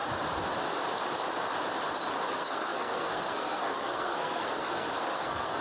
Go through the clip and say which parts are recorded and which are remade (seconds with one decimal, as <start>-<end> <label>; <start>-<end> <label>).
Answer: 0.0-2.3 recorded; 2.3-5.6 remade